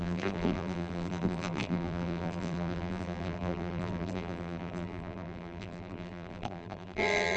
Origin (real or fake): fake